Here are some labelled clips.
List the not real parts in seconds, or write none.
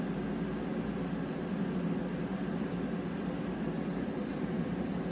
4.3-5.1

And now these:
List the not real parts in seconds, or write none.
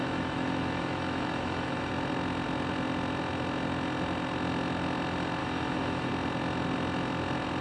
0.0-1.9; 5.4-6.1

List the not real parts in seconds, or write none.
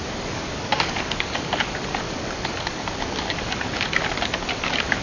0.0-5.0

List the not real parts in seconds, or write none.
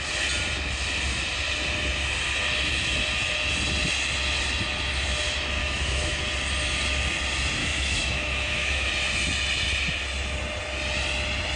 5.6-6.2; 7.6-8.9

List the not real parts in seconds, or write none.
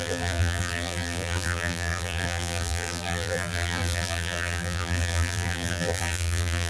0.0-6.7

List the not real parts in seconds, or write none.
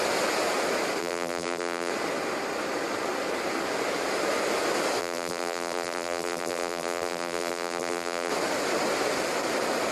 1.0-1.9; 5.0-8.3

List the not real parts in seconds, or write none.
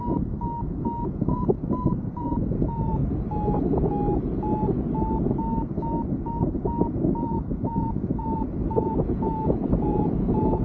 0.0-3.0; 6.4-10.6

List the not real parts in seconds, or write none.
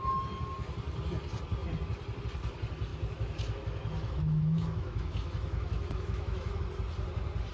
2.9-6.6